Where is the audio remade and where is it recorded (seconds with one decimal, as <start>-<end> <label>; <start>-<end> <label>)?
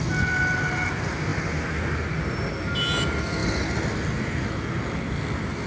0.0-5.7 recorded